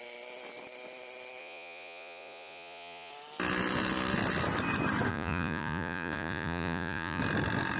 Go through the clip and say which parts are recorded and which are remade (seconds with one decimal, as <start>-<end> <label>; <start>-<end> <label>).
0.0-1.4 recorded; 1.4-3.1 remade; 3.1-5.1 recorded; 5.1-7.2 remade; 7.2-7.8 recorded